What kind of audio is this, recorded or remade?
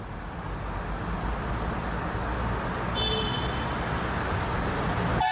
recorded